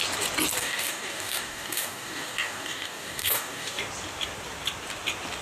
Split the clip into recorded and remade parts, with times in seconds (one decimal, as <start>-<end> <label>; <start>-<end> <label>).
0.0-0.6 recorded; 0.6-3.8 remade; 3.8-5.4 recorded